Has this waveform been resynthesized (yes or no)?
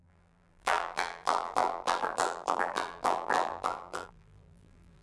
yes